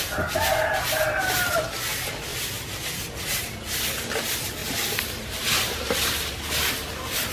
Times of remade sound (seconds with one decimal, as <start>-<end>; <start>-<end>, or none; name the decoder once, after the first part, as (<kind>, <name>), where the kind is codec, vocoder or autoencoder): 2.3-2.9 (vocoder, BigVGAN v2); 4.6-6.3